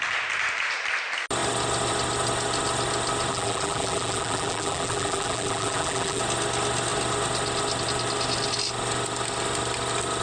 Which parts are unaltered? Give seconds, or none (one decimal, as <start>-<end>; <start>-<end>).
0.0-3.3; 6.2-10.2